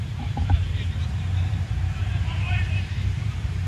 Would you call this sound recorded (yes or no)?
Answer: no